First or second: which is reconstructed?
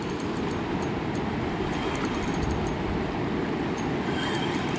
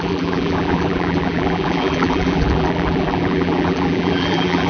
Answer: second